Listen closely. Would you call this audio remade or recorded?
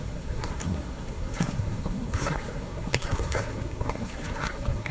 remade